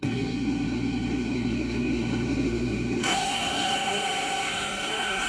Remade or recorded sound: remade